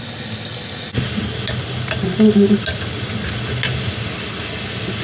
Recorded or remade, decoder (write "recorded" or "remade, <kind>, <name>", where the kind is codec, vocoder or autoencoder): recorded